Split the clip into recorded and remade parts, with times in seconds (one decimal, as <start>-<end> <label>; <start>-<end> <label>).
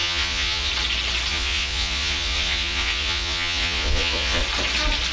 0.0-0.7 remade; 0.7-1.3 recorded; 1.3-4.4 remade; 4.4-5.1 recorded